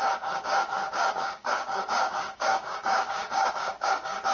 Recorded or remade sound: remade